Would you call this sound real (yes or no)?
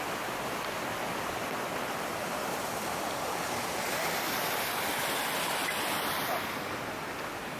yes